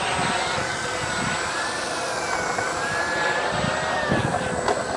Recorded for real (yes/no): yes